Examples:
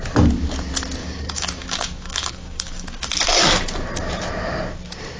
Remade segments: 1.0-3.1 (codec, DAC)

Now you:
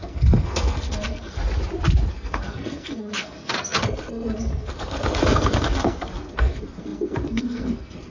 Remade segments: 0.0-1.4 (codec, SNAC); 2.1-8.1

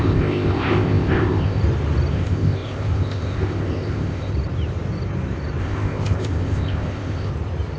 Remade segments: 0.0-1.6 (codec, ZipCodec); 2.1-4.3; 5.6-7.3

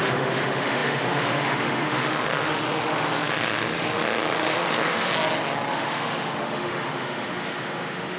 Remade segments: 0.0-5.1 (autoencoder, DAC-VAE); 5.7-8.2

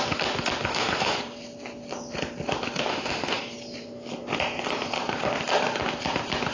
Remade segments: 0.7-1.2 (autoencoder, DAC-VAE); 2.9-3.4

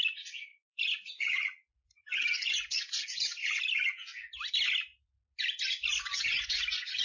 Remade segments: 0.5-3.6 (vocoder, Vocos)

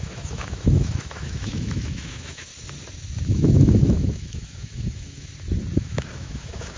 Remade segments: 0.0-2.5 (autoencoder, DAC-VAE); 3.2-5.3; 5.8-6.8